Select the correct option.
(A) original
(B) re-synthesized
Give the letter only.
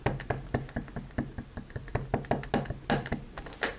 A